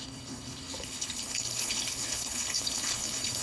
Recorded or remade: remade